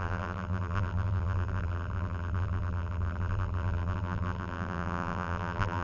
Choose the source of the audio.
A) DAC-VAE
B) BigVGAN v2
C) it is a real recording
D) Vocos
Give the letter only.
B